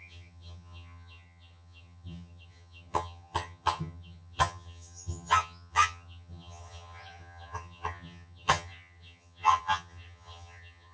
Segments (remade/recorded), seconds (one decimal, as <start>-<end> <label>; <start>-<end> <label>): 0.0-10.9 remade